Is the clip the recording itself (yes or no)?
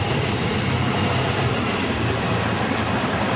no